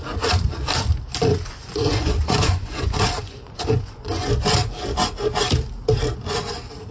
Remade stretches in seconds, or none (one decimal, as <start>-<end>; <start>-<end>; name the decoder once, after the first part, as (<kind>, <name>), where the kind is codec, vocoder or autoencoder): 1.3-4.3 (vocoder, Vocos)